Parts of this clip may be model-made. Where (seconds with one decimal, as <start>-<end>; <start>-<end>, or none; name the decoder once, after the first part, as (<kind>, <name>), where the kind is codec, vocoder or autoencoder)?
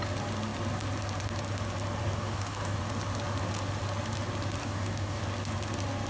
2.0-2.8 (codec, DAC); 4.6-5.2